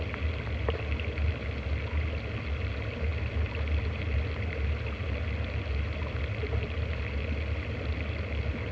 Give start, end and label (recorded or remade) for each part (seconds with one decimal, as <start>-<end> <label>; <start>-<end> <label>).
0.0-8.7 recorded